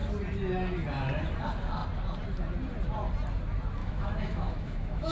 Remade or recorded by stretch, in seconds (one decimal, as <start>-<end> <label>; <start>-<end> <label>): 0.0-3.8 recorded; 3.8-5.1 remade

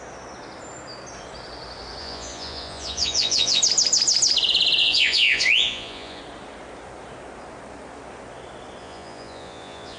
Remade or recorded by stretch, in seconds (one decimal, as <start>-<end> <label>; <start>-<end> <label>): 0.0-2.0 recorded; 2.0-3.6 remade; 3.6-4.8 recorded; 4.8-6.2 remade; 6.2-8.8 recorded; 8.8-10.0 remade

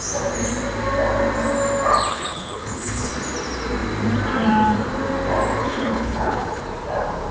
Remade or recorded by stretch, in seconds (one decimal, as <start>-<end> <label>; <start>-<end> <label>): 0.0-2.1 recorded; 2.1-3.1 remade; 3.1-5.6 recorded; 5.6-6.6 remade; 6.6-7.3 recorded

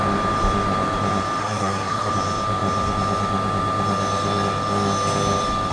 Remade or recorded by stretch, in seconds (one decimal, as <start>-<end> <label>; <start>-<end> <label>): 0.0-1.4 recorded; 1.4-2.1 remade; 2.1-5.7 recorded

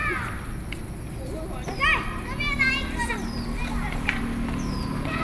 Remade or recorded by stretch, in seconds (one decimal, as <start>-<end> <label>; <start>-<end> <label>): 0.0-5.2 recorded